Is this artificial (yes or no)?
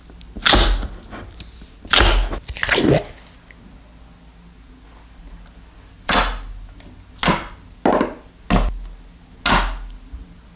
no